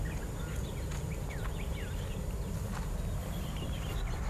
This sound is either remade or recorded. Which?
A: recorded